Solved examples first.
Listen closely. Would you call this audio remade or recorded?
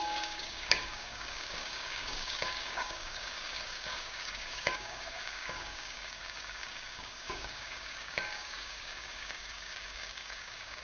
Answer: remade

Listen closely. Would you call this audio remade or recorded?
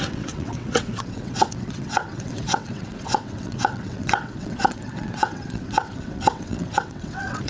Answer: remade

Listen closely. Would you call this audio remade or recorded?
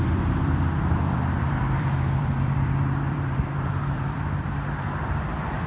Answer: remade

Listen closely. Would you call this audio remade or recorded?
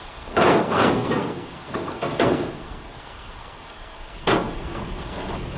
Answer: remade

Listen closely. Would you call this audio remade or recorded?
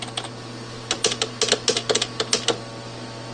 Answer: recorded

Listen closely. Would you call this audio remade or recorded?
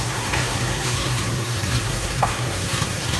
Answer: remade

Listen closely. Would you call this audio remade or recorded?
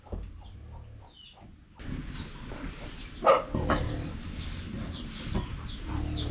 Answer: recorded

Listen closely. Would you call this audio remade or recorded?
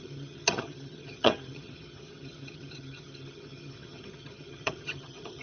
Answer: remade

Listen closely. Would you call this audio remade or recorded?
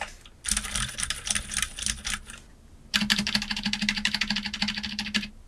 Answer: recorded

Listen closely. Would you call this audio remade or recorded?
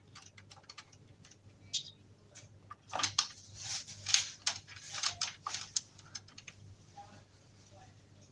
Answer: recorded